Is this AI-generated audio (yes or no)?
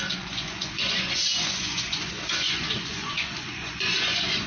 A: yes